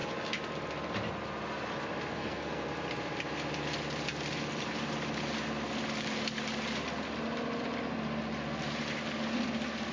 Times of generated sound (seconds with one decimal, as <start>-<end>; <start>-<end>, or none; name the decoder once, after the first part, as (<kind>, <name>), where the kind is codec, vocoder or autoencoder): 2.1-2.7 (codec, SNAC)